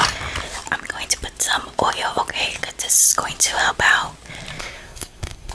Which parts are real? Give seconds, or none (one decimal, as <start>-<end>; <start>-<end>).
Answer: 0.0-4.6